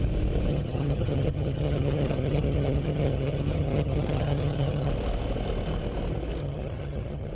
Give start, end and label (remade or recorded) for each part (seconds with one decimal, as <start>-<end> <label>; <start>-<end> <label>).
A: 0.0-0.5 recorded; 0.5-4.9 remade; 4.9-6.4 recorded; 6.4-7.3 remade